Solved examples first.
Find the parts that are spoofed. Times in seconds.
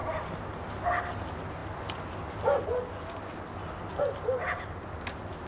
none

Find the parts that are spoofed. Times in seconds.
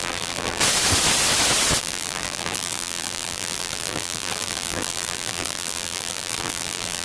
0.0-0.6; 1.8-7.0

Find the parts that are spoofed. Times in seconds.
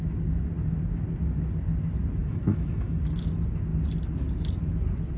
2.2-3.0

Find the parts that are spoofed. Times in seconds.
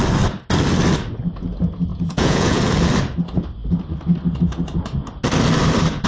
1.9-2.6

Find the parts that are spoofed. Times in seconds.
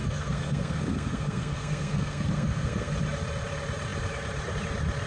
0.0-2.9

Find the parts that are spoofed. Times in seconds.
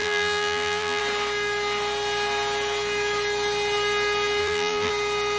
0.0-1.0; 4.4-4.9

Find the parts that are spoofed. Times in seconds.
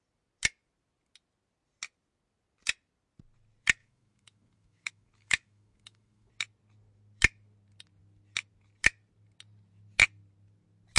3.8-6.3